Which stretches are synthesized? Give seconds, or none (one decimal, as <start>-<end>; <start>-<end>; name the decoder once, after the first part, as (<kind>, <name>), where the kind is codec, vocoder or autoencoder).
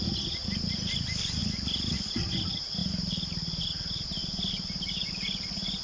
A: 2.8-3.6 (vocoder, BigVGAN v2)